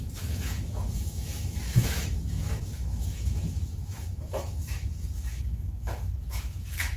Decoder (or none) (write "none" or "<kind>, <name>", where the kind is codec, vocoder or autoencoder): autoencoder, DAC-VAE